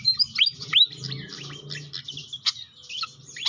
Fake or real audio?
real